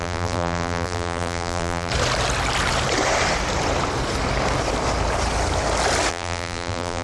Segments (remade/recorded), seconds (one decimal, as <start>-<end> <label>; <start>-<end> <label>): 0.0-1.9 remade; 1.9-6.1 recorded; 6.1-7.0 remade